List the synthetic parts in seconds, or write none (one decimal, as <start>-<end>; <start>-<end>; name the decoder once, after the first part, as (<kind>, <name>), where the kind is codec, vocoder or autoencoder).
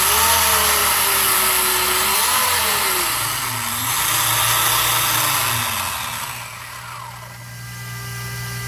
none